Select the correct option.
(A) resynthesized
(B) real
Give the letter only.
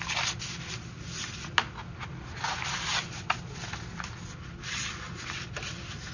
B